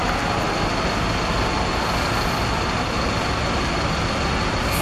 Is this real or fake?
real